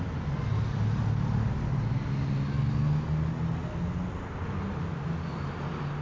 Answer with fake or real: real